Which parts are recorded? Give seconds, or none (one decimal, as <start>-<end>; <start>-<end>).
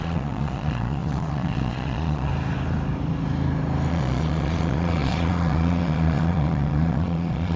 2.3-3.9